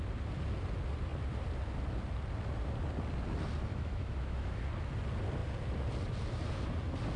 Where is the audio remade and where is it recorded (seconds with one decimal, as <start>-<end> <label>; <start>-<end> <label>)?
0.0-3.7 recorded; 3.7-4.6 remade; 4.6-7.2 recorded